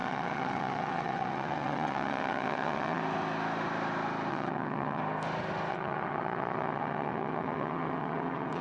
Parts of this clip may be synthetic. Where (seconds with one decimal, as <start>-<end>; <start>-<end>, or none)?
0.0-3.0; 4.3-5.0; 5.7-8.6

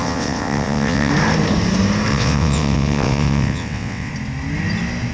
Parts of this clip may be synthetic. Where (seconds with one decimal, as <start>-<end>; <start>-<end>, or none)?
0.0-1.1; 2.1-4.1